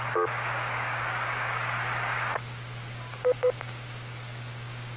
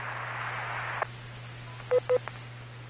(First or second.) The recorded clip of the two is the second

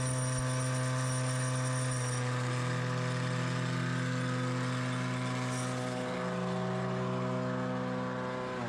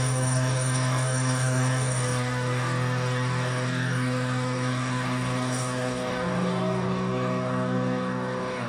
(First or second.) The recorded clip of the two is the first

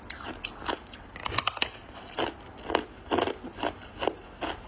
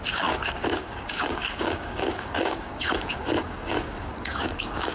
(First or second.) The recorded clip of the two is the first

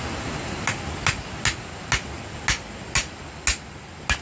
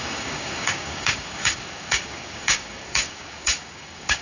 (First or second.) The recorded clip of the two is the first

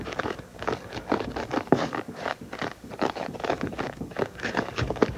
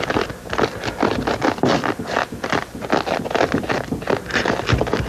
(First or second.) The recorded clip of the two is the second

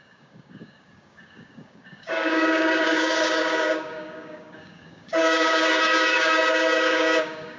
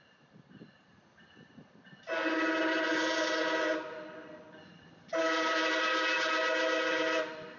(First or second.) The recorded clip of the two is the second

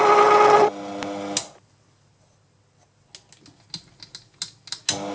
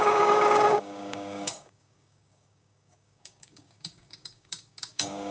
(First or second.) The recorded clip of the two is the first